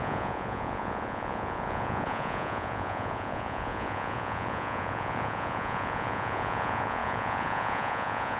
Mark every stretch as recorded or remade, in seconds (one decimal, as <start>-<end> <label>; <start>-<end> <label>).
0.0-8.4 remade